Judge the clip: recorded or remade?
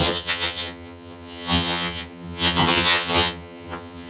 remade